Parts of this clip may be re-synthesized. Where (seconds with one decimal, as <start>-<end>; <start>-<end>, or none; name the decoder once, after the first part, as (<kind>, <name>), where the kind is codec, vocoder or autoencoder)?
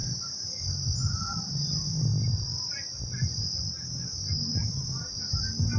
0.0-1.6 (vocoder, BigVGAN v2); 2.1-3.7